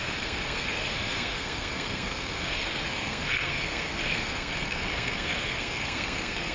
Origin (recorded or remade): remade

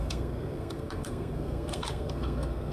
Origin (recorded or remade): remade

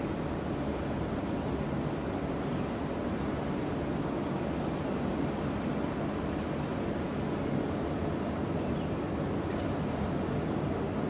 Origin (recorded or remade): recorded